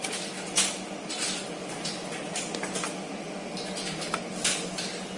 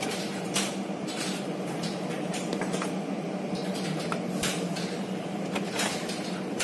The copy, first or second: second